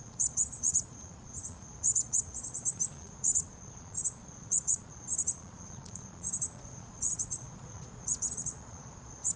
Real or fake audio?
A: fake